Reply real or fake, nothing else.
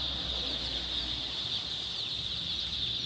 real